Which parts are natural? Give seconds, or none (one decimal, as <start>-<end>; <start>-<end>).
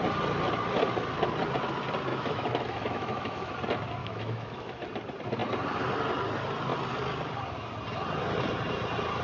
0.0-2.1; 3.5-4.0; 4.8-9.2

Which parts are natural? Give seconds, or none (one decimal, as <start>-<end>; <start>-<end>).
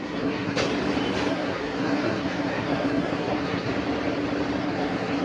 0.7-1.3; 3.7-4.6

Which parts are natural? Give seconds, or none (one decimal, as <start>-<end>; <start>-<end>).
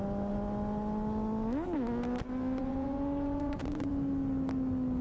0.0-2.6; 3.9-5.0